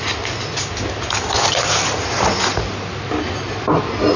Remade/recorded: recorded